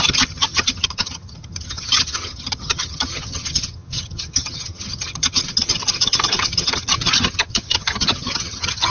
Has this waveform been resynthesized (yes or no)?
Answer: yes